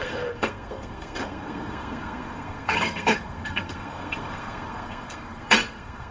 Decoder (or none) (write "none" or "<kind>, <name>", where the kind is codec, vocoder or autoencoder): codec, SNAC